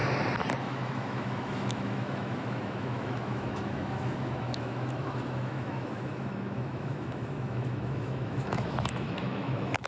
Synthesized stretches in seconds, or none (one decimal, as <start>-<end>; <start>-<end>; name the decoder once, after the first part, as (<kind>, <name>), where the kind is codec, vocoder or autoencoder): 0.6-9.9 (autoencoder, DAC-VAE)